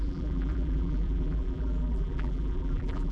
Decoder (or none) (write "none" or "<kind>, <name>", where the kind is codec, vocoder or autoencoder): vocoder, BigVGAN v2